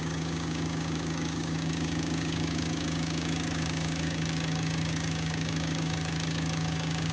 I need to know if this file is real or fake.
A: fake